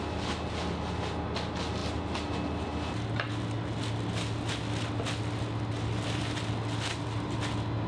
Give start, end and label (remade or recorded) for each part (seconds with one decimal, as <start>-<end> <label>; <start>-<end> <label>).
0.0-7.9 recorded